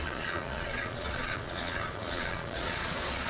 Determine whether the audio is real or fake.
fake